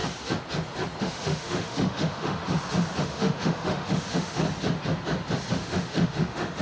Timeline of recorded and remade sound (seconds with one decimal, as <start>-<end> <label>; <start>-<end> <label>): 0.0-1.0 recorded; 1.0-2.4 remade; 2.4-3.0 recorded; 3.0-4.4 remade; 4.4-5.5 recorded; 5.5-6.6 remade